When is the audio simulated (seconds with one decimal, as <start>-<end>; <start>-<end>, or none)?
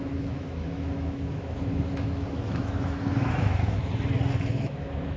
0.0-3.8; 4.4-5.2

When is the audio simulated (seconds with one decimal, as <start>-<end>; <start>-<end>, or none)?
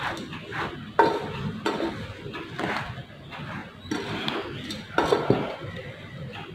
none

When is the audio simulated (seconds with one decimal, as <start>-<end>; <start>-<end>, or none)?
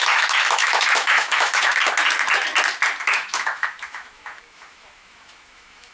0.0-1.7; 3.0-5.9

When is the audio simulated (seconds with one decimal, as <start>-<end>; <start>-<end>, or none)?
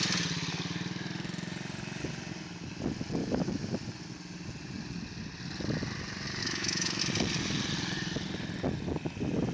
3.2-3.7; 6.4-7.0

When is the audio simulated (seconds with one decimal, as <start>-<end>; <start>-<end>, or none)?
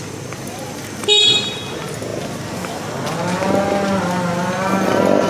none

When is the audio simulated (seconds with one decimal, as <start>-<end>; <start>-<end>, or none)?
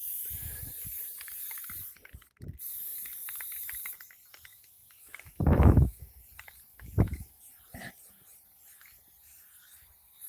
4.5-6.1; 6.7-7.4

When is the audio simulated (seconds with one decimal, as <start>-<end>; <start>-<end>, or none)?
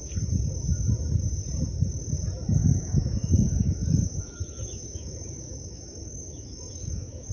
2.6-7.3